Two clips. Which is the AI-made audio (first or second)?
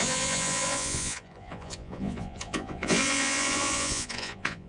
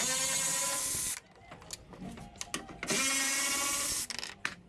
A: first